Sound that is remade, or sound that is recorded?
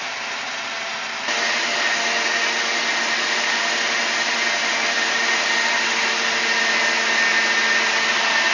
recorded